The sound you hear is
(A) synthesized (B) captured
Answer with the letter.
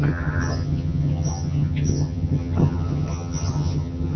A